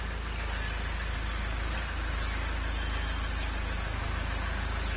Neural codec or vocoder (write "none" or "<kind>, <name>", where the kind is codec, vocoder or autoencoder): none